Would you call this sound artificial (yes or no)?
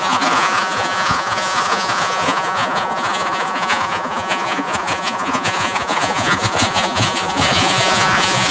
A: yes